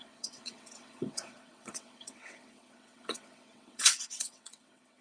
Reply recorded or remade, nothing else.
remade